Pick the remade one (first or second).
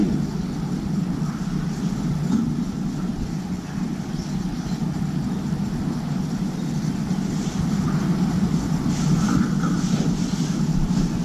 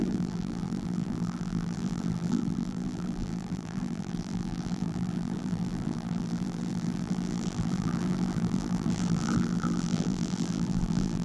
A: second